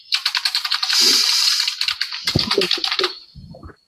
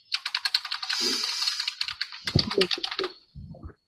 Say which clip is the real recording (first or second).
second